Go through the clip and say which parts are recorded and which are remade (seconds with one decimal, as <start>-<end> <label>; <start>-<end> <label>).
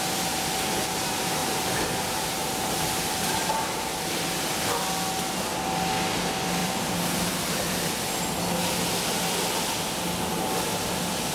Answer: 0.0-1.4 recorded; 1.4-4.2 remade; 4.2-6.6 recorded; 6.6-8.1 remade; 8.1-11.3 recorded